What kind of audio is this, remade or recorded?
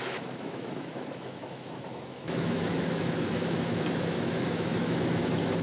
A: remade